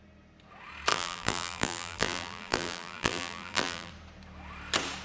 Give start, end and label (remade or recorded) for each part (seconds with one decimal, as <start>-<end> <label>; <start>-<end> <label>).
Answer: 0.0-0.9 recorded; 0.9-3.9 remade; 3.9-5.0 recorded